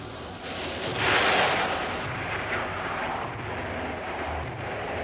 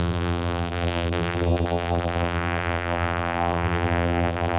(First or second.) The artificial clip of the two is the second